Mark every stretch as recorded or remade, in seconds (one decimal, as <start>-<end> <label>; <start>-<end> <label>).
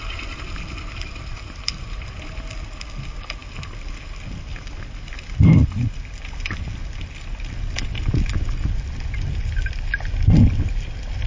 0.0-11.3 recorded